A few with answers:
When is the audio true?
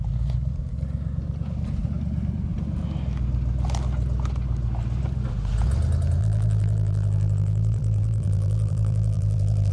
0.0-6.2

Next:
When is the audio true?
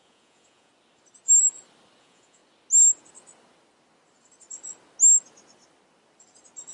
0.7-2.0; 2.4-6.7